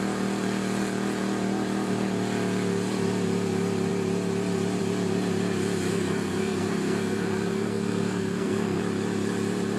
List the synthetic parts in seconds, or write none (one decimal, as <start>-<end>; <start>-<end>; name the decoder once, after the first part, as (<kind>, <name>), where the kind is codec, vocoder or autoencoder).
5.9-8.8 (codec, SNAC)